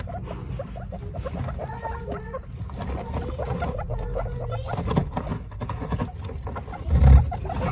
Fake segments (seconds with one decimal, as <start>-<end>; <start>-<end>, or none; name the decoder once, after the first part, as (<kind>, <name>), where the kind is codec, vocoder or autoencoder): none